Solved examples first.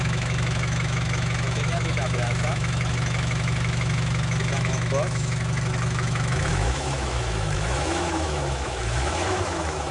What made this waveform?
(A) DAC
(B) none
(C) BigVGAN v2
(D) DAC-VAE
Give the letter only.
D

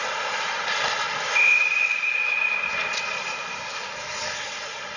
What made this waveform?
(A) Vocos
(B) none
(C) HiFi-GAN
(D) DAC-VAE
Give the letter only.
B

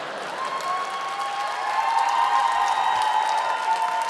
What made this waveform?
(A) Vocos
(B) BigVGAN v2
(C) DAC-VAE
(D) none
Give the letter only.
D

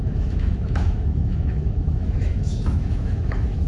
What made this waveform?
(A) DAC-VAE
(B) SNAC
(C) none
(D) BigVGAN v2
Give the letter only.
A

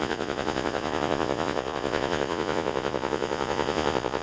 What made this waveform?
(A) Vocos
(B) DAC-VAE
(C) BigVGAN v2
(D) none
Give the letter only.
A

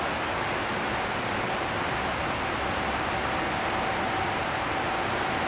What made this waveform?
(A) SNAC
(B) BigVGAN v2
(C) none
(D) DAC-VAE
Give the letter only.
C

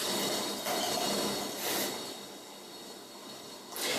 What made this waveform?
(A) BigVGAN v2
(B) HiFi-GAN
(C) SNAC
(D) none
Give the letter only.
D